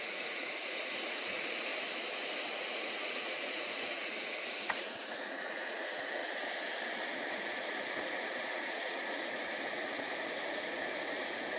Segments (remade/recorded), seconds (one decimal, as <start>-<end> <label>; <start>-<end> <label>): 0.0-1.7 remade; 1.7-2.5 recorded; 2.5-6.2 remade; 6.2-7.3 recorded; 7.3-11.6 remade